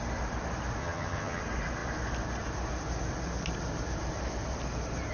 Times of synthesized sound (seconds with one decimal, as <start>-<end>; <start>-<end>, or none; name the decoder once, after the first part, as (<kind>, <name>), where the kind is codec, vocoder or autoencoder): 0.8-1.4 (vocoder, HiFi-GAN)